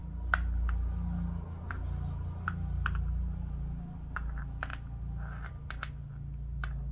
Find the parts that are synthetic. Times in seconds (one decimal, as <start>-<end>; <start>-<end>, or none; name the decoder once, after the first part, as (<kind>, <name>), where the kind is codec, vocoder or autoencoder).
none